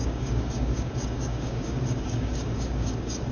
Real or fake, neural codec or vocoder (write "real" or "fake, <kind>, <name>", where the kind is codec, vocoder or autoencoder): fake, codec, DAC